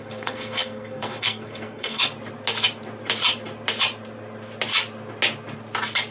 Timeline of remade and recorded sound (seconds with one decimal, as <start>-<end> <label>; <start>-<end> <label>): 0.0-2.0 remade; 2.0-6.1 recorded